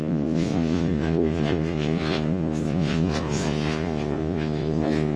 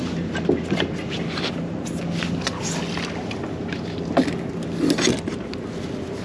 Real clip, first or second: second